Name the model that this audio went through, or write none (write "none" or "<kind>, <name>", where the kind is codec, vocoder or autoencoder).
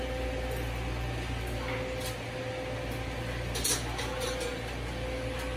none